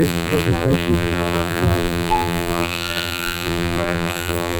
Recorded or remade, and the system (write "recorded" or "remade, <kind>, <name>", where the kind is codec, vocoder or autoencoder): remade, vocoder, BigVGAN v2